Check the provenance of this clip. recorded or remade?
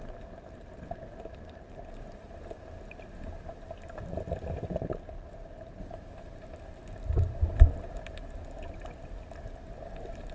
recorded